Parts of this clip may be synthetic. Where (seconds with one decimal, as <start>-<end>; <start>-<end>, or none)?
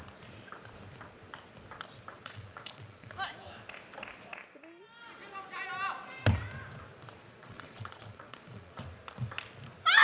2.2-3.1; 7.2-8.8